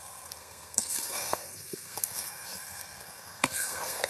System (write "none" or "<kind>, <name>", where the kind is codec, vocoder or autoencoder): codec, SNAC